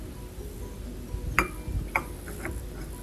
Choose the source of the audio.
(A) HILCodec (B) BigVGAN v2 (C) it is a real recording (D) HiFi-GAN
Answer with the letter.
C